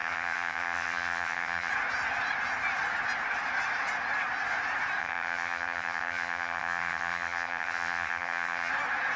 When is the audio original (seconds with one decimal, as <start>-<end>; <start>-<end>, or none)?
1.7-5.0; 8.7-9.2

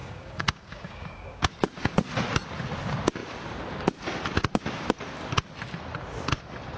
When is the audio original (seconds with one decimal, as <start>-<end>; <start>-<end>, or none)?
1.5-6.8

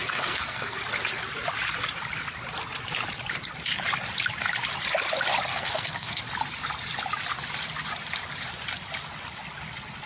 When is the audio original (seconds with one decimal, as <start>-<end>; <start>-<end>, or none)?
0.8-5.5; 6.2-10.1

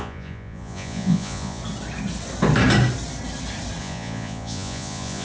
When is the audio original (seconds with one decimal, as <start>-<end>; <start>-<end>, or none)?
1.6-3.8

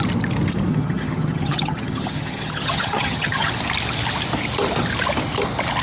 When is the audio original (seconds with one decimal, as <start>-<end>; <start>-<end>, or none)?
0.0-0.7; 3.5-5.8

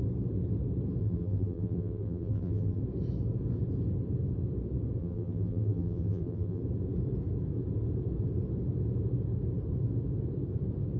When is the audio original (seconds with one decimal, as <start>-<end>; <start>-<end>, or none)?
0.0-1.0; 2.8-5.0; 6.6-11.0

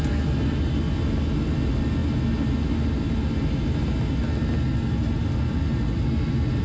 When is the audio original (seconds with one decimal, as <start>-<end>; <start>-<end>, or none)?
0.0-6.6